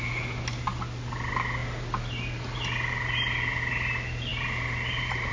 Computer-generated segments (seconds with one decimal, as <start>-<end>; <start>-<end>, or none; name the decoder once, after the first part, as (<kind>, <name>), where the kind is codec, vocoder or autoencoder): none